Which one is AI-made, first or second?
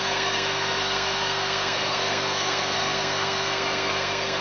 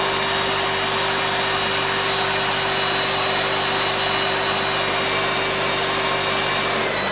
first